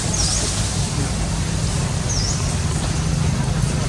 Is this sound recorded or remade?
recorded